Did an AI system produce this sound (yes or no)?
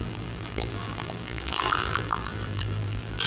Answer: yes